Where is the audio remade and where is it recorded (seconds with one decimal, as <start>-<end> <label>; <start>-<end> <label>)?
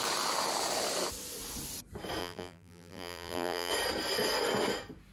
0.0-2.2 recorded; 2.2-3.7 remade; 3.7-5.1 recorded